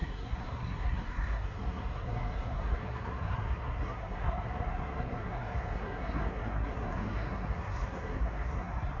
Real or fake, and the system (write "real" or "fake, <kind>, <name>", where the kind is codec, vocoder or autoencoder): fake, codec, SNAC